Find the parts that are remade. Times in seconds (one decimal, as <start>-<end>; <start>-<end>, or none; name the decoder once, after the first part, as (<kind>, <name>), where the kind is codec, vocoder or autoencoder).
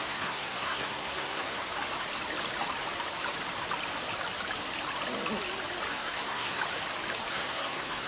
0.0-1.6 (codec, SNAC); 5.9-6.6; 7.3-8.1